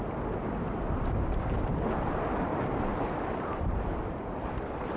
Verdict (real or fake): real